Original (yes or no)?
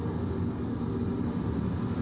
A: yes